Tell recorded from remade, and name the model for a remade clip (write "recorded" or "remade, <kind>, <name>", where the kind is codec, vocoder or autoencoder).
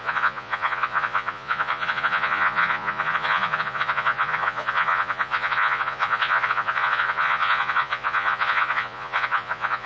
remade, vocoder, Vocos